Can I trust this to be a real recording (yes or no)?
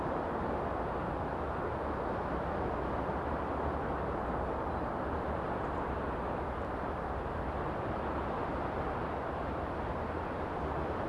yes